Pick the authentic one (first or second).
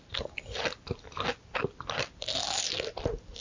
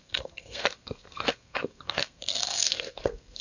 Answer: first